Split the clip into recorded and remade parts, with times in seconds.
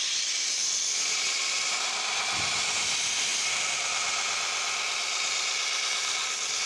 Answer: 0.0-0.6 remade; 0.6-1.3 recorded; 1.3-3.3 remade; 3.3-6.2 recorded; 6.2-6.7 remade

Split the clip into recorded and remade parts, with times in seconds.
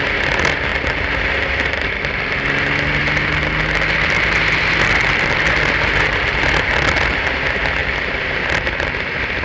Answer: 0.0-7.8 recorded; 7.8-8.3 remade; 8.3-9.4 recorded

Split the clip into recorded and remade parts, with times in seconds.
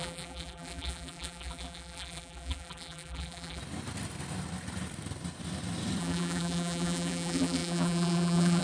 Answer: 0.0-3.6 remade; 3.6-6.0 recorded; 6.0-8.6 remade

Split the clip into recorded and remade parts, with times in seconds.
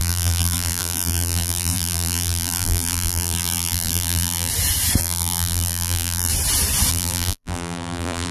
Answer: 0.0-4.5 remade; 4.5-5.0 recorded; 5.0-6.3 remade; 6.3-6.9 recorded; 6.9-8.3 remade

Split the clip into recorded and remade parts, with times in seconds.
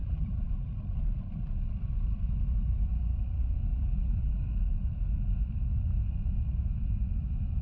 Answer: 0.0-0.7 remade; 0.7-3.7 recorded; 3.7-4.4 remade; 4.4-7.6 recorded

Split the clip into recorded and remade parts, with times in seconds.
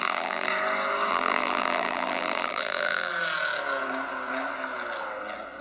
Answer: 0.0-0.5 remade; 0.5-1.1 recorded; 1.1-3.1 remade; 3.1-5.6 recorded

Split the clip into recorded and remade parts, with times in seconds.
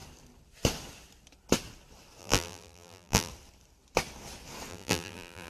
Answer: 0.0-2.2 recorded; 2.2-3.3 remade; 3.3-4.7 recorded; 4.7-5.5 remade